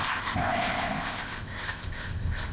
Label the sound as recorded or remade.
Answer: remade